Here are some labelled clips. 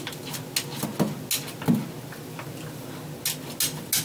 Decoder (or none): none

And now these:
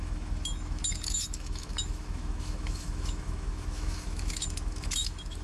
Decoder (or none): autoencoder, DAC-VAE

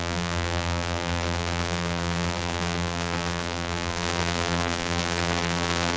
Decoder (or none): vocoder, BigVGAN v2